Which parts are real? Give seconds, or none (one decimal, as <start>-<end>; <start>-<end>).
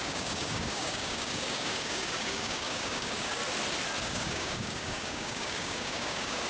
3.4-4.0